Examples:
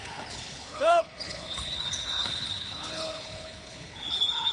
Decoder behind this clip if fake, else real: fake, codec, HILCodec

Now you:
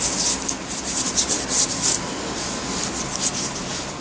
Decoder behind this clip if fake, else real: real